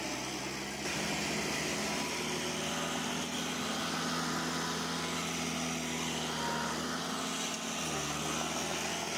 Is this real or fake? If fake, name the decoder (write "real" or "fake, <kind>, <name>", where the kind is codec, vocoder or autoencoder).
real